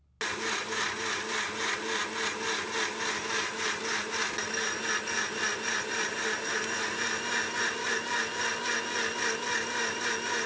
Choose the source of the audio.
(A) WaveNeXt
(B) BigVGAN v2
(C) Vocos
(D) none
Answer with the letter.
D